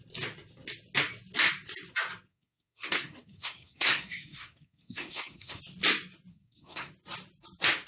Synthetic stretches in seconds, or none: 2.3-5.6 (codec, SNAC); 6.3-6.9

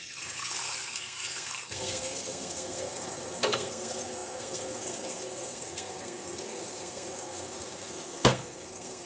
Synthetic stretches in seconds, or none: 0.0-9.1 (codec, SNAC)

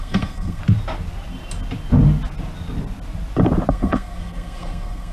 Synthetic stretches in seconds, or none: 0.0-0.6 (codec, SNAC); 3.7-5.1

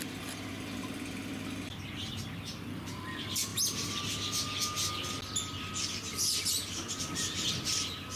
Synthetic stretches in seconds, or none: none